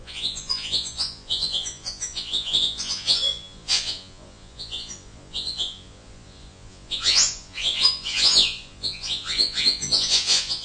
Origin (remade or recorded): remade